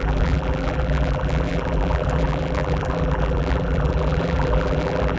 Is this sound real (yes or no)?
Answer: no